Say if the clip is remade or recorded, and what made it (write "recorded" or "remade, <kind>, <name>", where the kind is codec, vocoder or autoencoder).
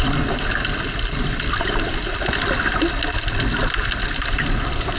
recorded